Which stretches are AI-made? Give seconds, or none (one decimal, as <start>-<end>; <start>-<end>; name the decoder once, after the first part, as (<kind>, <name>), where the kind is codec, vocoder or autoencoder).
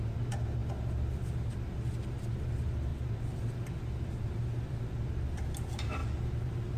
none